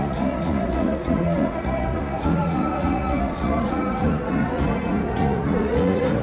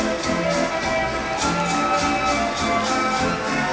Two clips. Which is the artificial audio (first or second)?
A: first